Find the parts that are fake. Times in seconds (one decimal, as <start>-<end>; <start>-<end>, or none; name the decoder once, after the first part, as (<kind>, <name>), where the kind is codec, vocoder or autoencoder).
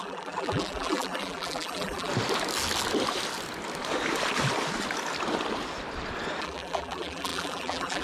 0.0-2.1 (vocoder, BigVGAN v2); 6.4-8.0